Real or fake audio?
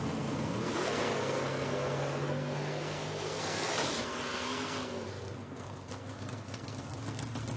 fake